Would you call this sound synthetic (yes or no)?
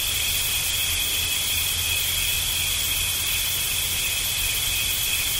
no